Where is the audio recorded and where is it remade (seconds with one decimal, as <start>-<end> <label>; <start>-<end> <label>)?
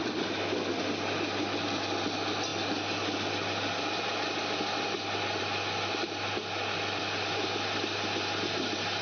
0.0-9.0 recorded